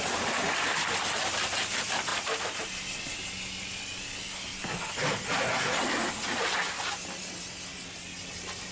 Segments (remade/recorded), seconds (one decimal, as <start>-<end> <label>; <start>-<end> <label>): 0.0-8.7 recorded